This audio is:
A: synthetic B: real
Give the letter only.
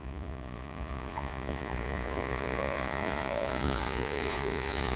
A